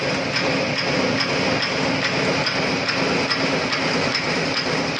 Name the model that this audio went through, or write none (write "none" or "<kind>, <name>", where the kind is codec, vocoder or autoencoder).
none